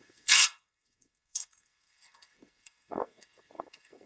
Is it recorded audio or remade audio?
remade